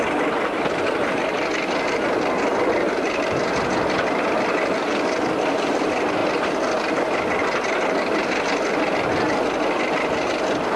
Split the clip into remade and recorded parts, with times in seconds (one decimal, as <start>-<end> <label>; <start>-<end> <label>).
0.0-10.8 recorded